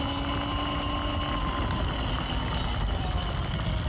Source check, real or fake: real